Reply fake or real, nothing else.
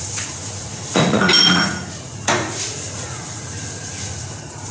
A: fake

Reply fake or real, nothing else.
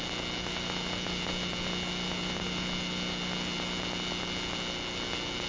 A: real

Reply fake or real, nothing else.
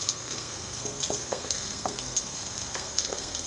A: fake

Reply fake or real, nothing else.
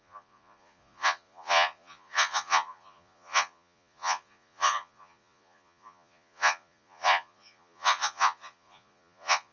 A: fake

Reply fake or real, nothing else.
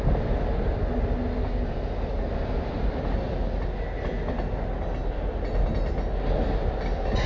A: real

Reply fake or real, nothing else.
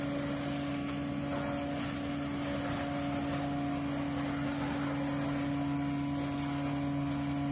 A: real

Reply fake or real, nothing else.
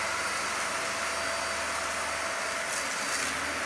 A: real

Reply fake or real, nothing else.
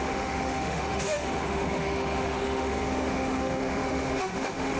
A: fake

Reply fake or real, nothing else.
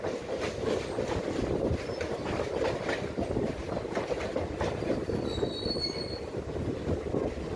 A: real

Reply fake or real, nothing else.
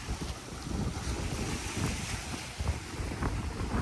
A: real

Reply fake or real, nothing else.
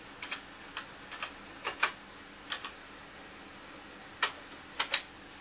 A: real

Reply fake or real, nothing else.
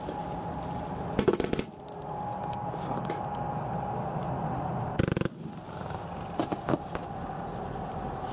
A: real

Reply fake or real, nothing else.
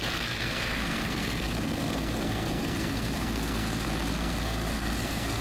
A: fake